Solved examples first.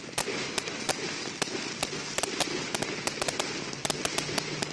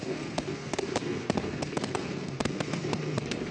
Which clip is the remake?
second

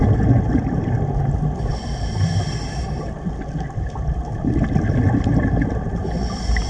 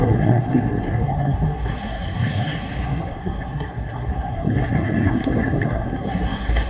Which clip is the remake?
second